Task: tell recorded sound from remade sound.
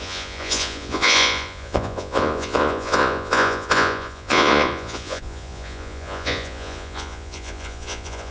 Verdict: remade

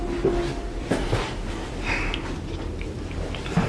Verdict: recorded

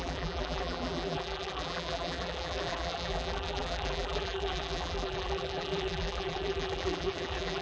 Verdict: remade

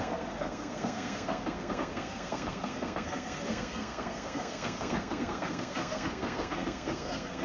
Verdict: remade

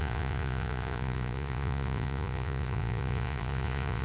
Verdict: remade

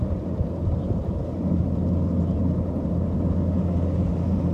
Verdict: recorded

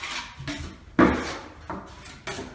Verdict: recorded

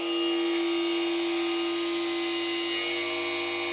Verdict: recorded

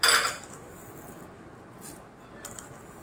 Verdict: recorded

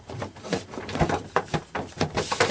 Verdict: remade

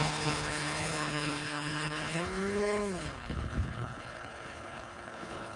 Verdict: remade